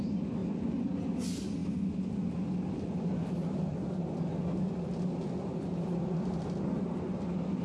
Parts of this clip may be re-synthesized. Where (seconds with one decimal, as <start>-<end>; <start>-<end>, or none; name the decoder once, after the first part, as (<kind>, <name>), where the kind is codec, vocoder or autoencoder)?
none